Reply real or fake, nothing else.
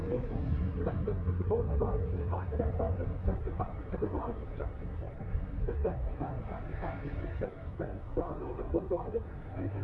fake